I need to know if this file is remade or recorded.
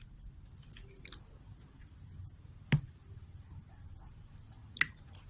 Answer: recorded